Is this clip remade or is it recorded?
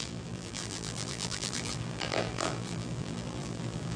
remade